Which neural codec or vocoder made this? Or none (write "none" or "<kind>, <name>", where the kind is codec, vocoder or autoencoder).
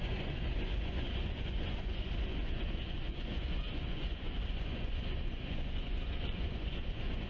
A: vocoder, Vocos